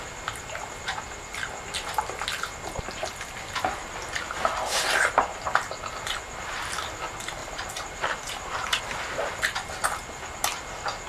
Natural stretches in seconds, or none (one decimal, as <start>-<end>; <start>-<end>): 0.0-7.4; 8.8-11.1